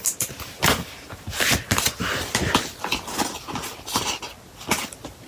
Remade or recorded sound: recorded